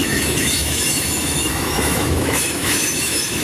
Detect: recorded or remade remade